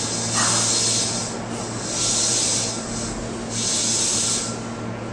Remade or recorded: recorded